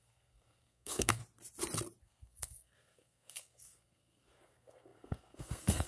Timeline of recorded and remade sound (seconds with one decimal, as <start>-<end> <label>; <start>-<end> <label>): 0.0-1.2 remade; 1.2-2.0 recorded; 2.0-5.9 remade